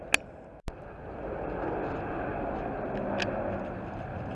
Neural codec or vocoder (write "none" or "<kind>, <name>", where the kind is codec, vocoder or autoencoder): none